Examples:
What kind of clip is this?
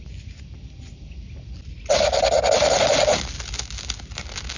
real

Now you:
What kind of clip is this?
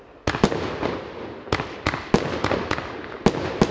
real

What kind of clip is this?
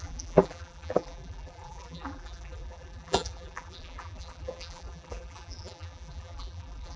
fake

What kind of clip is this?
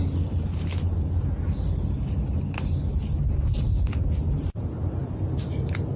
real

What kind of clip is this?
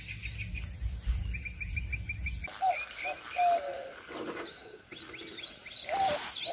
real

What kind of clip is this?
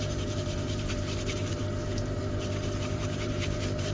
fake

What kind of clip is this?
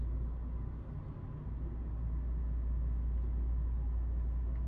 real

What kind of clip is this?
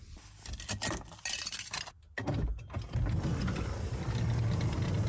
real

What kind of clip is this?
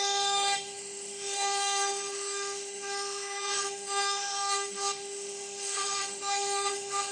fake